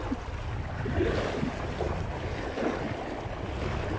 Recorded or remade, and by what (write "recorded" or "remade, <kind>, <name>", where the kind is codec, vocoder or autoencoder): recorded